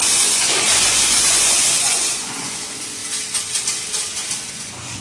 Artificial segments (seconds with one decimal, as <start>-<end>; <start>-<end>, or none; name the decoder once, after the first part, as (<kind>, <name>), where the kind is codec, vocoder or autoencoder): 0.0-3.0 (vocoder, Vocos); 4.4-5.0